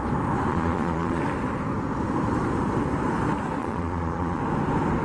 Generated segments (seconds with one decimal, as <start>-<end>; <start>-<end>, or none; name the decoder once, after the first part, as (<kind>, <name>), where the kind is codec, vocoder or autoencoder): 0.5-1.2 (vocoder, Vocos); 3.6-4.4